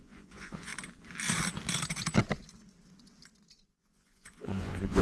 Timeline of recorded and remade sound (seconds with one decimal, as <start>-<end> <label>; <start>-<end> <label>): 0.0-0.7 remade; 0.7-3.7 recorded; 3.7-5.0 remade